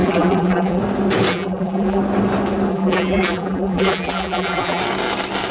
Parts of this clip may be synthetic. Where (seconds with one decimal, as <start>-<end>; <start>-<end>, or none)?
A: 0.0-0.8; 1.3-2.0; 2.7-4.8